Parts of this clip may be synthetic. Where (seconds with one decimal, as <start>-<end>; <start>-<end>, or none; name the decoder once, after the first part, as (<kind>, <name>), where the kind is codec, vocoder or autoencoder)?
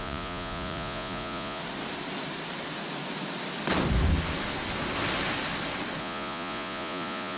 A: 0.0-1.6 (vocoder, Vocos); 6.0-7.4